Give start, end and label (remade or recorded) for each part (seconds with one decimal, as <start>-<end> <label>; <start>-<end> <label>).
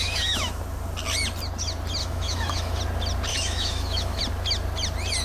0.0-0.6 remade; 0.6-2.0 recorded; 2.0-2.8 remade; 2.8-3.3 recorded; 3.3-4.2 remade; 4.2-5.2 recorded